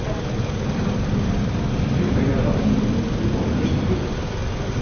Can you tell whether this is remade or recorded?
recorded